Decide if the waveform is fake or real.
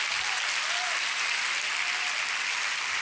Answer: real